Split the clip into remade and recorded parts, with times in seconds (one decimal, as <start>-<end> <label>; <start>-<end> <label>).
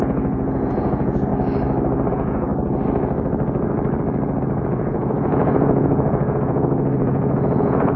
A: 0.0-1.3 remade; 1.3-2.1 recorded; 2.1-2.5 remade; 2.5-4.4 recorded; 4.4-8.0 remade